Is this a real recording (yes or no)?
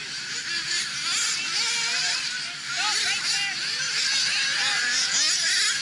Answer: yes